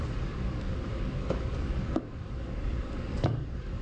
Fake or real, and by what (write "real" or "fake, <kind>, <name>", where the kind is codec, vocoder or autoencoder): fake, codec, DAC